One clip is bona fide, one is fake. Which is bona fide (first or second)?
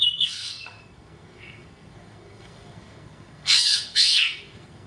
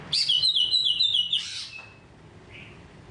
second